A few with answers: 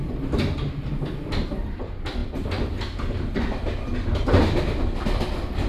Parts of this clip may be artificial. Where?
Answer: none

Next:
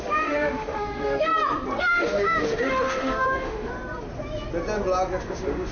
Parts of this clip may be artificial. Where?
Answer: 0.0-1.3 (autoencoder, DAC-VAE); 1.8-3.7; 5.2-5.7